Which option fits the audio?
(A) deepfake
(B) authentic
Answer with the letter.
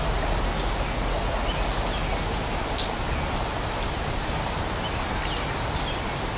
B